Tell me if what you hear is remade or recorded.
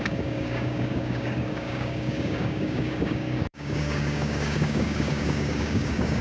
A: remade